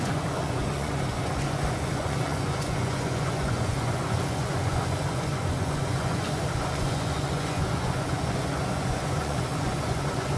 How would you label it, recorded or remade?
remade